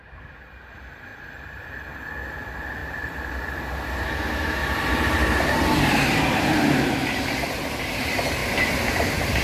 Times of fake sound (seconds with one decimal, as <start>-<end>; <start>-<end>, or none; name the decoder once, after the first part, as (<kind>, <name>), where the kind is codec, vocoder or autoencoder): 1.1-1.7 (vocoder, BigVGAN v2); 2.8-3.3; 4.6-7.4